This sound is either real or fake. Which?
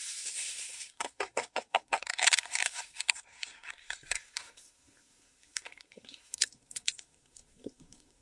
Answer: fake